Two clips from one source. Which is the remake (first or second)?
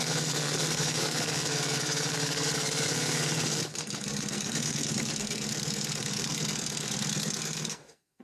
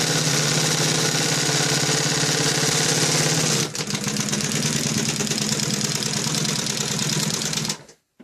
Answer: first